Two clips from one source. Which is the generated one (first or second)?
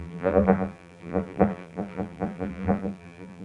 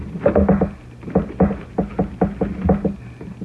first